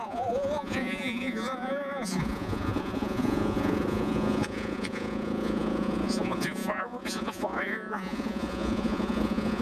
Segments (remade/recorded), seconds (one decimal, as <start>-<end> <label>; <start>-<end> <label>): 0.0-9.6 remade